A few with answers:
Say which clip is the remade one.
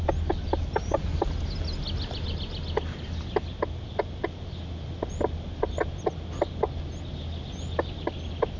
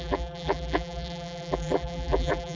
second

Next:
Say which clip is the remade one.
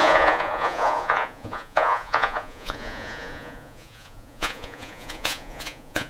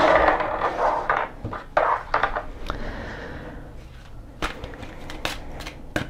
first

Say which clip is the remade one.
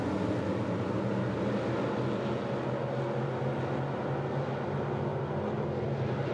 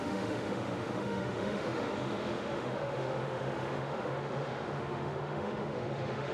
second